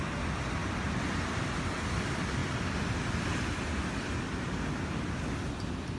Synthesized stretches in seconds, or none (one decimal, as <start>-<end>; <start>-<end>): none

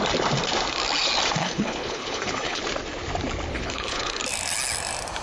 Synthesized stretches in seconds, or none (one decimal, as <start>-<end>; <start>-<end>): 1.4-2.6; 3.5-4.2